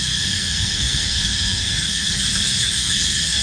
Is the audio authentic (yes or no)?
no